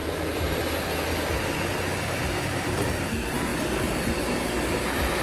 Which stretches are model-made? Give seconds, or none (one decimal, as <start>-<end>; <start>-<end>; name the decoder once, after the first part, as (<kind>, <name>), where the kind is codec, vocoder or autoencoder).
2.0-5.2 (vocoder, BigVGAN v2)